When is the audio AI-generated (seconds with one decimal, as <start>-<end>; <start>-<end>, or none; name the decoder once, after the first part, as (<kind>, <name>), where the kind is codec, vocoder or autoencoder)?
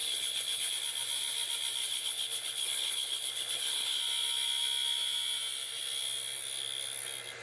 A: 0.0-0.7 (codec, HILCodec); 1.8-4.0